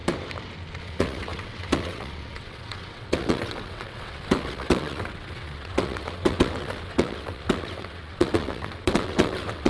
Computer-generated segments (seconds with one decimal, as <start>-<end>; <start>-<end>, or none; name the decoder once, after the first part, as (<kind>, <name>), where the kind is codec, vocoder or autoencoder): 0.8-9.7 (vocoder, WaveNeXt)